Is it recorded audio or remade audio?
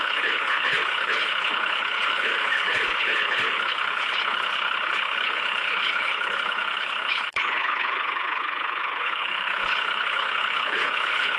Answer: remade